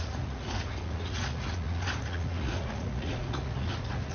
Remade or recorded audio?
remade